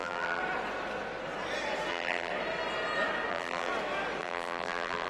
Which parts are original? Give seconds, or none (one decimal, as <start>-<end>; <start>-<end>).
0.4-1.9; 2.3-3.3; 3.7-4.2